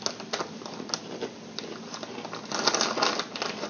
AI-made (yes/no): no